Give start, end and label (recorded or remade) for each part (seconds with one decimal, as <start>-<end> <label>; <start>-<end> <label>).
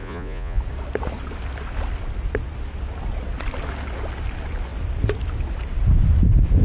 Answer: 0.0-0.6 remade; 0.6-6.6 recorded